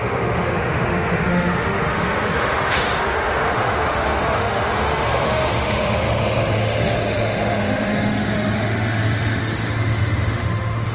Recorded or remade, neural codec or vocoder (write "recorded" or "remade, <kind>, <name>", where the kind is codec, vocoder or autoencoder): remade, autoencoder, DAC-VAE